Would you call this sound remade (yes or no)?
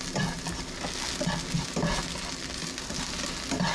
no